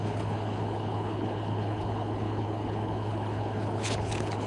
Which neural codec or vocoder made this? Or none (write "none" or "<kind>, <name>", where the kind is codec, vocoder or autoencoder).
codec, HILCodec